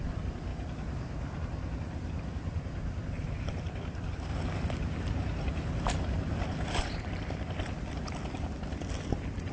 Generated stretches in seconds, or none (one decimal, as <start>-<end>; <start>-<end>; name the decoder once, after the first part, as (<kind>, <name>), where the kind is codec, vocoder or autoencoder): none